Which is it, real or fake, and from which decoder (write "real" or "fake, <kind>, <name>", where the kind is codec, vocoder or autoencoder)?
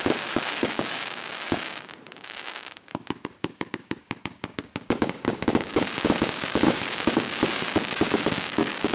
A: fake, codec, DAC